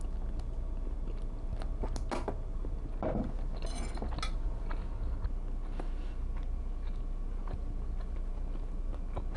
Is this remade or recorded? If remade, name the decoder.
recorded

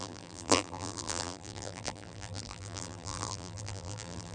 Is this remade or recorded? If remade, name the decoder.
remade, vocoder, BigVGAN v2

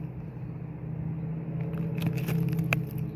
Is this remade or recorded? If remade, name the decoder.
recorded